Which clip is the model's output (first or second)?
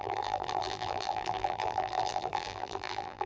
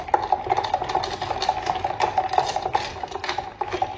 first